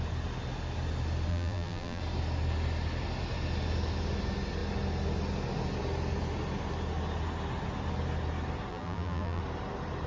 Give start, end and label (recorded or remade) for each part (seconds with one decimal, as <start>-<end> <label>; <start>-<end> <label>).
0.0-1.3 recorded; 1.3-2.0 remade; 2.0-8.7 recorded; 8.7-9.4 remade; 9.4-10.1 recorded